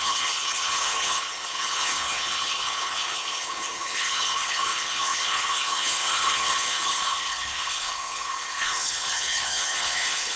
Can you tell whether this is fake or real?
fake